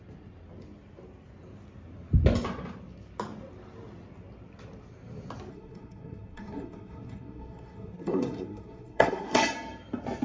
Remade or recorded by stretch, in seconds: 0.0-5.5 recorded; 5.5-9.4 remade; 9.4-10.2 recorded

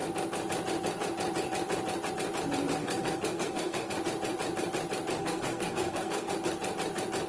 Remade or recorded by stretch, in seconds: 0.0-2.8 recorded; 2.8-3.9 remade; 3.9-5.2 recorded; 5.2-6.3 remade; 6.3-7.3 recorded

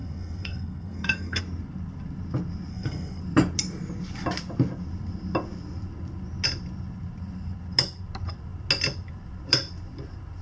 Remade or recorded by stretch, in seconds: 0.0-1.4 remade; 1.4-2.7 recorded; 2.7-3.2 remade; 3.2-10.4 recorded

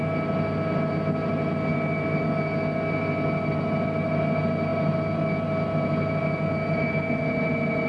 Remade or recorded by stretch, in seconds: 0.0-7.9 recorded

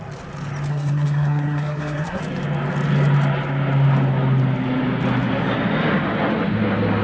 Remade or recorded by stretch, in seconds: 0.0-0.7 recorded; 0.7-2.2 remade; 2.2-7.0 recorded